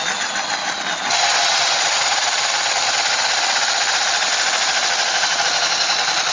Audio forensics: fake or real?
fake